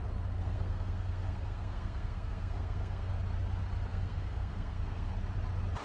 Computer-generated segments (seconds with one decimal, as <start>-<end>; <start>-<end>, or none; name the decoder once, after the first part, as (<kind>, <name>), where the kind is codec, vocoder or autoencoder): 0.4-3.1 (codec, SNAC); 3.9-5.1